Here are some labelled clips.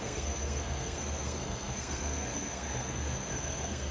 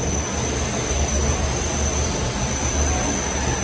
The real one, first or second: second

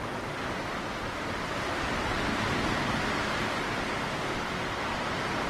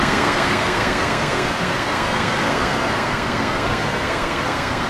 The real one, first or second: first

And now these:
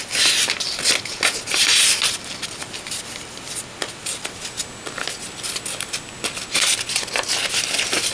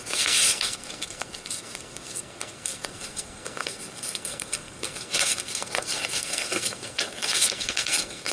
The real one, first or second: first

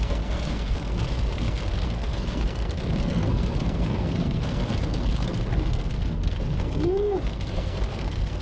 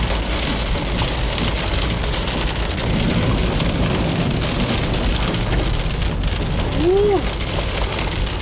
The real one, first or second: second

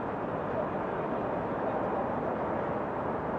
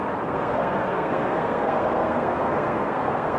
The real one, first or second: first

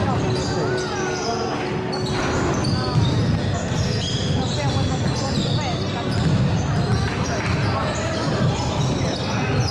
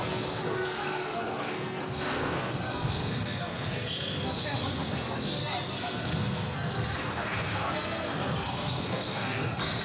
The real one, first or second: first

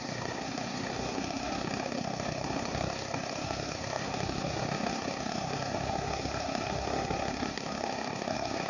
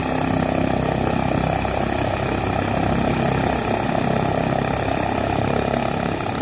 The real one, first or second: second